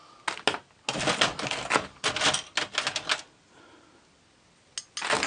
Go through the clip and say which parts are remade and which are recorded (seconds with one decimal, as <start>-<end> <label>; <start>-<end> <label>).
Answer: 0.0-5.3 recorded